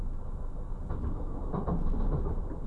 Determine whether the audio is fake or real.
real